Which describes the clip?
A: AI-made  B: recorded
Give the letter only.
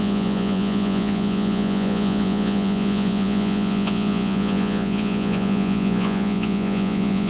A